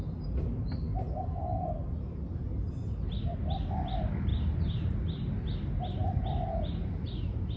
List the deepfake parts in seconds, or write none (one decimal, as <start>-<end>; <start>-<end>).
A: 4.3-5.4